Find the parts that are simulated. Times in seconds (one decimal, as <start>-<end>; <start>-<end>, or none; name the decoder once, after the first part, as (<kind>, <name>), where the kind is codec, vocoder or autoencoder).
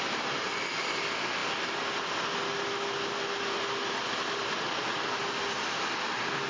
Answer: none